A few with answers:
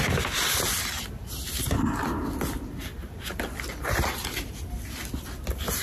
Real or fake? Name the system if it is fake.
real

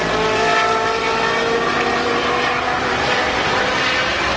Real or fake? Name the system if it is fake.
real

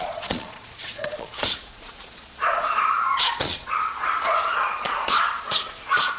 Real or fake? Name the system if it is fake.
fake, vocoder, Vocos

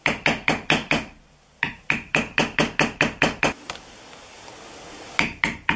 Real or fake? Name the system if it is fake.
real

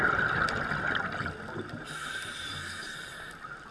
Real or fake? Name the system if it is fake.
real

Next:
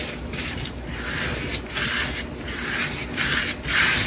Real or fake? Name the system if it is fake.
real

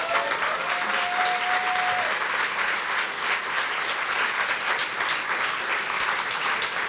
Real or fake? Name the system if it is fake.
real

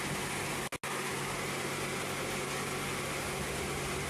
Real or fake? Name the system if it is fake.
real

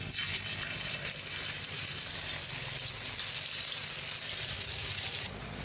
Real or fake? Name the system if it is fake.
real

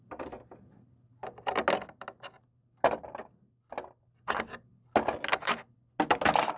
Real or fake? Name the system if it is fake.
real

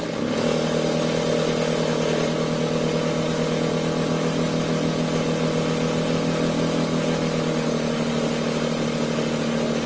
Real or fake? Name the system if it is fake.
real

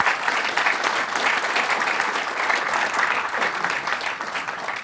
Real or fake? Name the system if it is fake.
real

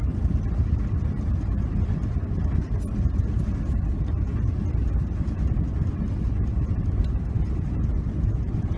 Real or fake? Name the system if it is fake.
real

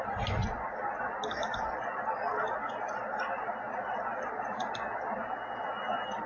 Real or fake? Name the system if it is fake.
real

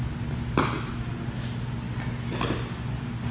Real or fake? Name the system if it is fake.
real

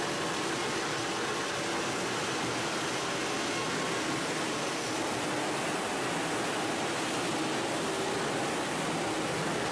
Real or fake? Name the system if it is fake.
real